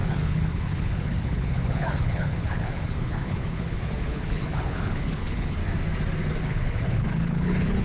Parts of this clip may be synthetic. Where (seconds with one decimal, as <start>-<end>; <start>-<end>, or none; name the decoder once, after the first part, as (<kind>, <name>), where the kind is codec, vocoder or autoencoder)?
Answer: 0.0-5.6 (codec, HILCodec); 6.4-7.8